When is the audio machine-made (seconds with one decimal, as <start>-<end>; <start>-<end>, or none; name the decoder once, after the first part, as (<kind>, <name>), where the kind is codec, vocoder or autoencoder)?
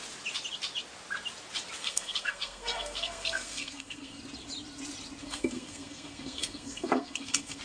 1.8-4.2 (codec, SNAC); 5.2-7.6